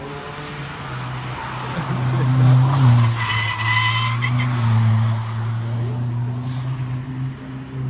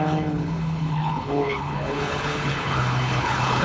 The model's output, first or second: second